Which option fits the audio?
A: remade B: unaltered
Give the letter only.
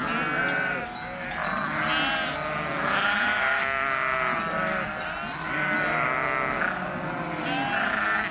B